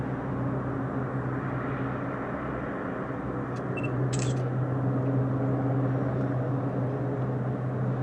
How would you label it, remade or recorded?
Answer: recorded